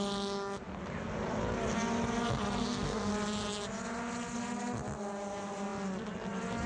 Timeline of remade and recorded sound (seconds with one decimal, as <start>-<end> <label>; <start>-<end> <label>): 0.0-2.6 recorded; 2.6-3.1 remade; 3.1-6.7 recorded